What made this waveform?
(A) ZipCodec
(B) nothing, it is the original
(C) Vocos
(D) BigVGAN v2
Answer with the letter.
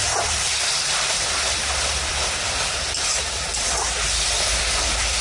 D